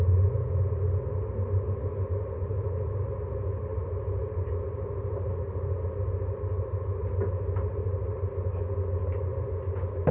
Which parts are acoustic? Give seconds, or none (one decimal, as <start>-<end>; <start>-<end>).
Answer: 0.0-10.1